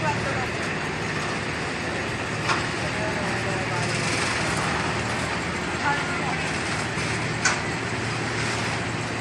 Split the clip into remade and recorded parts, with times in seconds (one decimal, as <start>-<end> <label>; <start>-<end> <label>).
0.0-9.2 recorded